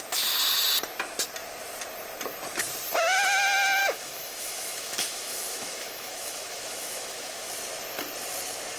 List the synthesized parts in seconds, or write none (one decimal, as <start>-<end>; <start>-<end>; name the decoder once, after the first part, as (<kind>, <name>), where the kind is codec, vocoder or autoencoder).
3.8-7.5 (autoencoder, DAC-VAE)

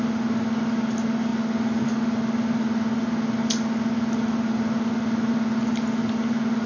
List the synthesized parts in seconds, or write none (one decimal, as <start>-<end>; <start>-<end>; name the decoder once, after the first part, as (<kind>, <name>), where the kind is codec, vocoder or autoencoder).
none

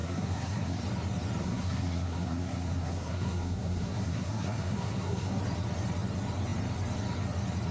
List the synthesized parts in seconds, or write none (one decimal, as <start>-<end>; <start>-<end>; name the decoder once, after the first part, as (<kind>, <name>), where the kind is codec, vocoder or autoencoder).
0.0-0.8 (codec, SNAC); 1.4-5.4

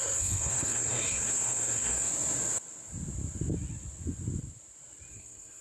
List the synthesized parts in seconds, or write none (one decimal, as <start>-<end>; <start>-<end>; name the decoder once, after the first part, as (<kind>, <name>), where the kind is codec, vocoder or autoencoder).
0.0-2.1 (codec, SNAC); 5.1-5.6

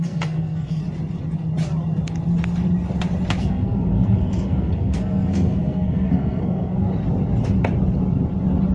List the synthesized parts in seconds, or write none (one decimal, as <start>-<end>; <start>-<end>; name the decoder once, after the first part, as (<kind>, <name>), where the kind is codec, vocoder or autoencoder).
0.0-0.8 (codec, SNAC); 3.4-6.9

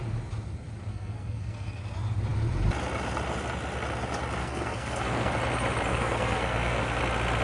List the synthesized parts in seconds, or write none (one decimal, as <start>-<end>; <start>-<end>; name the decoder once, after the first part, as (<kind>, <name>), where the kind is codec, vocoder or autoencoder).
0.9-1.8 (codec, SNAC); 4.4-5.4; 5.9-7.0